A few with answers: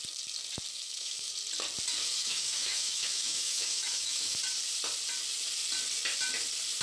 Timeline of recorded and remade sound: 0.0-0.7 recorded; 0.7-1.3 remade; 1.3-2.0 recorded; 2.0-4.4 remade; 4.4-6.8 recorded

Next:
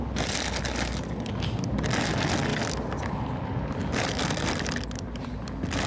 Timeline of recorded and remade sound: 0.0-5.9 recorded

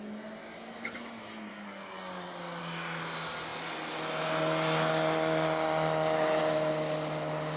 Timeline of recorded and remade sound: 0.0-1.5 recorded; 1.5-2.6 remade; 2.6-7.6 recorded

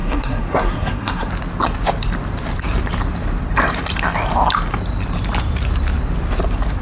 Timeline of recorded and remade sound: 0.0-1.3 remade; 1.3-6.8 recorded

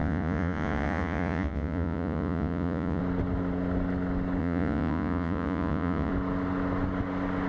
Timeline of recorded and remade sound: 0.0-3.0 remade; 3.0-4.4 recorded; 4.4-6.1 remade; 6.1-7.5 recorded

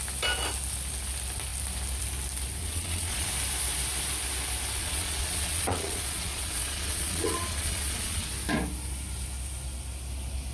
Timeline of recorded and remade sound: 0.0-2.6 recorded; 2.6-3.3 remade; 3.3-4.8 recorded; 4.8-8.3 remade; 8.3-10.5 recorded

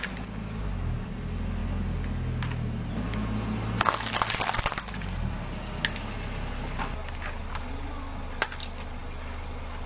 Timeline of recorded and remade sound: 0.0-9.9 recorded